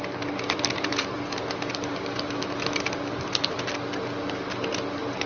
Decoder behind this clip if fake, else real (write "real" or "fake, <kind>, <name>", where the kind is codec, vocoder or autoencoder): real